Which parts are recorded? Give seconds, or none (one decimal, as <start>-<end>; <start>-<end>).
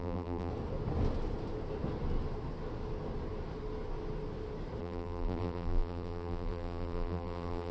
0.5-4.8